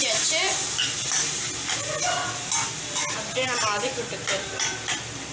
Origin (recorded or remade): recorded